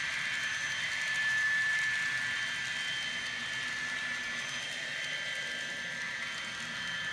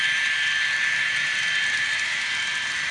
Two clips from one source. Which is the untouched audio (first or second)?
first